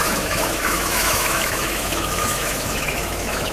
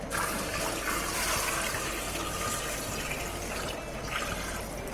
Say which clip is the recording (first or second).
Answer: second